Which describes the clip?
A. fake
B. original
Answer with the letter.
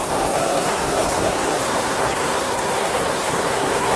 A